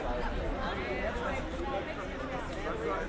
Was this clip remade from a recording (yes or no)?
no